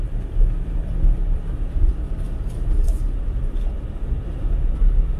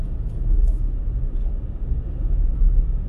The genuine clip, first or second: second